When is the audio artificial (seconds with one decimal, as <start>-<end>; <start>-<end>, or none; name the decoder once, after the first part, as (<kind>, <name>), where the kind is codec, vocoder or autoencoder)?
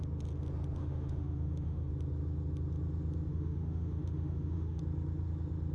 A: 0.8-1.9 (autoencoder, DAC-VAE); 3.3-4.8